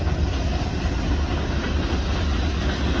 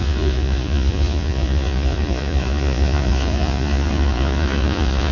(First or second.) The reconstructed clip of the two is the second